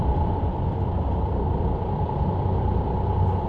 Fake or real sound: fake